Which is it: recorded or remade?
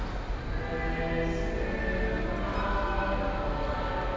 recorded